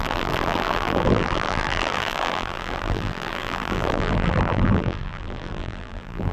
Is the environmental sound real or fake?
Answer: fake